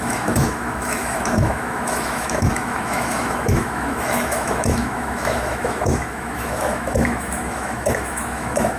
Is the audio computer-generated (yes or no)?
yes